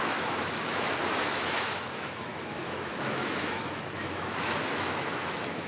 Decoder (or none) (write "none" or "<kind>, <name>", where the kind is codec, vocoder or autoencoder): autoencoder, DAC-VAE